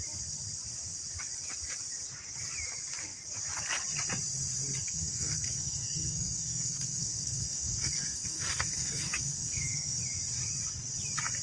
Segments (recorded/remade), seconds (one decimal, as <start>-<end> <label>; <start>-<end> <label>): 0.0-4.8 recorded; 4.8-10.0 remade; 10.0-11.4 recorded